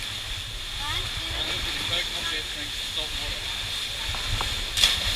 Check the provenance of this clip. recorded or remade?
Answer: recorded